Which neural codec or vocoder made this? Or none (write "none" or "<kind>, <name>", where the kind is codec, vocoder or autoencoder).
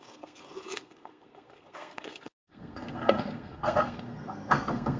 codec, SNAC